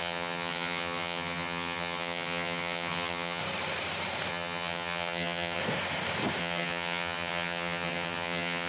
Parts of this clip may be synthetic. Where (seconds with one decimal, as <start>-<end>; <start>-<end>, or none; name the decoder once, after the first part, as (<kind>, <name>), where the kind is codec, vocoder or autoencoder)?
0.0-3.4 (vocoder, HiFi-GAN); 4.3-5.6; 6.4-8.7